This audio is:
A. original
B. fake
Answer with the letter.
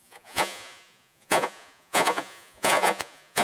B